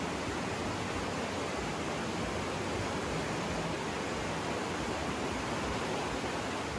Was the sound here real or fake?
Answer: real